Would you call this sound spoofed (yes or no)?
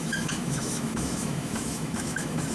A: yes